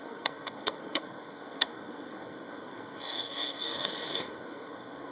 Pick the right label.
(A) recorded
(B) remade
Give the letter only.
B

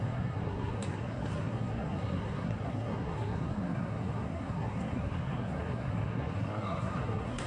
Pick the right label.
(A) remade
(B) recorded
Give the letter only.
A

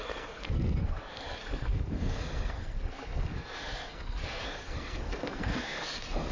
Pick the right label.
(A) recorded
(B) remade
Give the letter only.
B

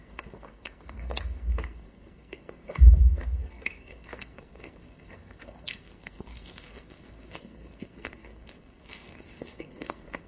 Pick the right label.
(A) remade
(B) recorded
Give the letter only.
A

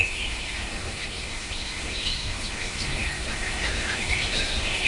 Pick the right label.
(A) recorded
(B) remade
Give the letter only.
B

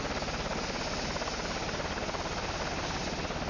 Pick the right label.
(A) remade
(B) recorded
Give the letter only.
B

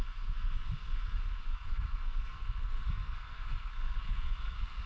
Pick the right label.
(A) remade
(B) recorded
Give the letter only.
A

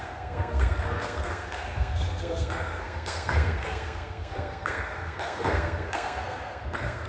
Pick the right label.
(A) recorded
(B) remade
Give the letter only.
B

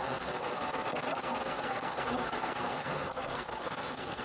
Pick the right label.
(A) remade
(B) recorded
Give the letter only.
A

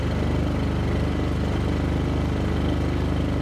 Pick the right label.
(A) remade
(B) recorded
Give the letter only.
B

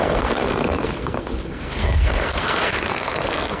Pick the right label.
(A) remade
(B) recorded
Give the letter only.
A